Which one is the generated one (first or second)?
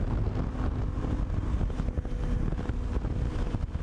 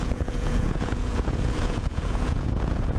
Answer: second